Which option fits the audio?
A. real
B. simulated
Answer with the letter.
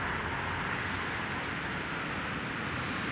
A